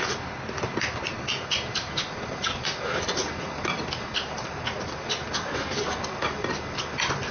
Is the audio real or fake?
real